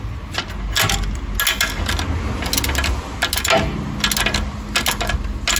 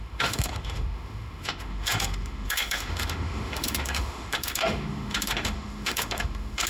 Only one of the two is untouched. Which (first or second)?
first